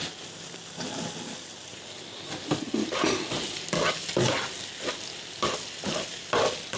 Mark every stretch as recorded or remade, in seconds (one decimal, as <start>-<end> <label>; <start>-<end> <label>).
0.0-6.8 recorded